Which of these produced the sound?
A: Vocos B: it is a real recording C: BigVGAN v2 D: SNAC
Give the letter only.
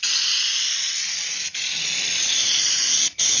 B